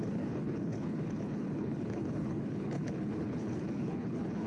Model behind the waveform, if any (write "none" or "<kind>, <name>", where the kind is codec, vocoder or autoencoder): codec, HILCodec